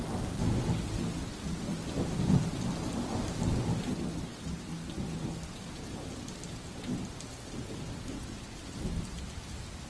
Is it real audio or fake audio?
real